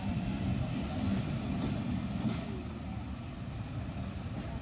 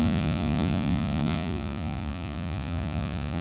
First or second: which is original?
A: first